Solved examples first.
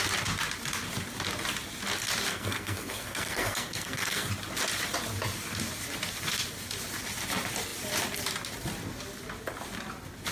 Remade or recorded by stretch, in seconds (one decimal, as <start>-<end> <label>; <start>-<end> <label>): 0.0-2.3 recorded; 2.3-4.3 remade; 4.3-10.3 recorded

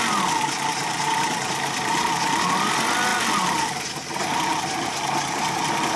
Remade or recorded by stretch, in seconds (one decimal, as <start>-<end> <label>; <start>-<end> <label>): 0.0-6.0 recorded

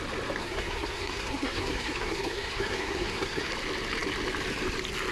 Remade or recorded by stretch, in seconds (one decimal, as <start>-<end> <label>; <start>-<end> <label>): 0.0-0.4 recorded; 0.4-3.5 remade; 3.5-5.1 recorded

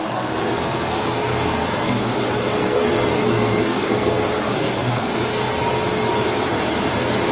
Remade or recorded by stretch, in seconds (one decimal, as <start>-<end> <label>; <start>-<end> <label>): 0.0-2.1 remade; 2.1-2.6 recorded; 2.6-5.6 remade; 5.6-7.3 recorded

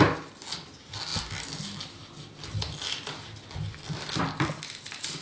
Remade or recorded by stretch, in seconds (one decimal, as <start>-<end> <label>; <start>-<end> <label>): 0.0-5.2 recorded

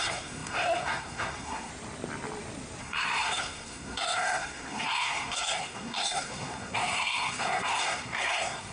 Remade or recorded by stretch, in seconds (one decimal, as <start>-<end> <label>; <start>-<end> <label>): 0.0-1.7 remade; 1.7-2.8 recorded; 2.8-8.7 remade

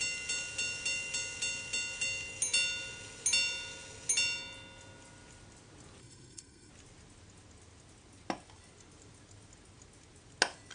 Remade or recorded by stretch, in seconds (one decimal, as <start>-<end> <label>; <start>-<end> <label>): 0.0-6.0 recorded; 6.0-6.7 remade; 6.7-10.7 recorded